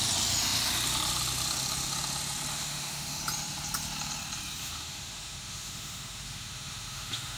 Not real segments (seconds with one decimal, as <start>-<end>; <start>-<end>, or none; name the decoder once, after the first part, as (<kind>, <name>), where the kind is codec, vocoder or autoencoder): 2.5-3.2 (autoencoder, DAC-VAE); 4.6-7.4